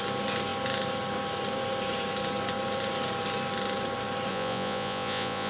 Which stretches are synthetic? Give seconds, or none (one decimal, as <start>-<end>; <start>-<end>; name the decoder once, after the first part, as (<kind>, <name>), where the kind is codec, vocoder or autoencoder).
4.3-5.5 (vocoder, Vocos)

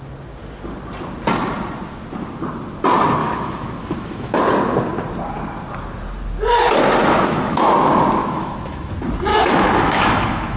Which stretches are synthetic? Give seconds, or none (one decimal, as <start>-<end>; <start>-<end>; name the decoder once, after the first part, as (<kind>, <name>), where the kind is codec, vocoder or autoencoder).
3.2-4.4 (autoencoder, DAC-VAE); 7.0-7.7; 8.2-8.9; 9.3-10.6